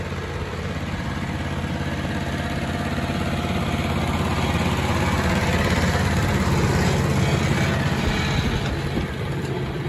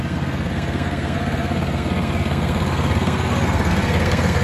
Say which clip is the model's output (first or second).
second